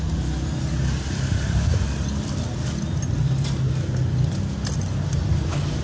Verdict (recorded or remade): recorded